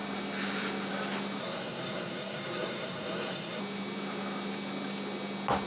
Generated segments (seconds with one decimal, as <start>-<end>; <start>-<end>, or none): 1.4-3.6